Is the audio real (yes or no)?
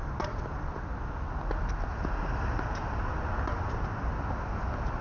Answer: yes